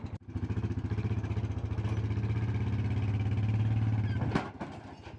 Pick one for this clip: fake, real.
real